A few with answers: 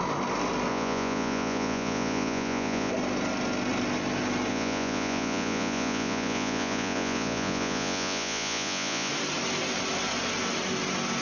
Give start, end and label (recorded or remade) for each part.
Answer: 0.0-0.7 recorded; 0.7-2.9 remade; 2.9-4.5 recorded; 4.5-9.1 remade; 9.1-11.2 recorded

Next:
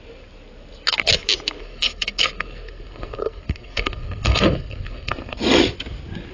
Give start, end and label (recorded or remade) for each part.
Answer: 0.0-1.6 recorded; 1.6-5.4 remade; 5.4-6.3 recorded

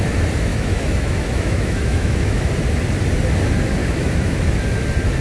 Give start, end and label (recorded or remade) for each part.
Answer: 0.0-0.5 recorded; 0.5-2.5 remade; 2.5-3.8 recorded; 3.8-4.5 remade; 4.5-5.2 recorded

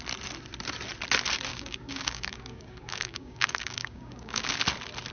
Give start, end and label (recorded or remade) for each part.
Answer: 0.0-1.5 recorded; 1.5-4.6 remade; 4.6-5.1 recorded

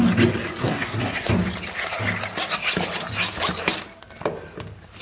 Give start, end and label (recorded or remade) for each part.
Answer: 0.0-0.6 recorded; 0.6-1.3 remade; 1.3-5.0 recorded

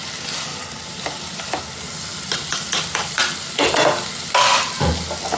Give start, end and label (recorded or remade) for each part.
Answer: 0.0-0.5 recorded; 0.5-1.6 remade; 1.6-5.4 recorded